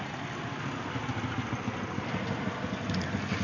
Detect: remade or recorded recorded